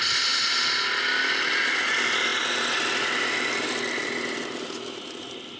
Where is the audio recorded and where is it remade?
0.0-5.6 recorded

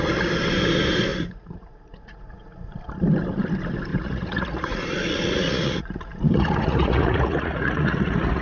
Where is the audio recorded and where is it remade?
0.0-1.1 recorded; 1.1-2.8 remade; 2.8-3.9 recorded; 3.9-8.4 remade

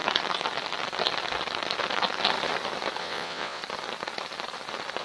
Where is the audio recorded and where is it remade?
0.0-3.0 recorded; 3.0-3.6 remade; 3.6-5.0 recorded